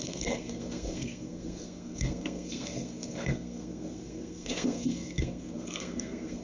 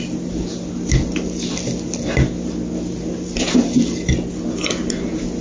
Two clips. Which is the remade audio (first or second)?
first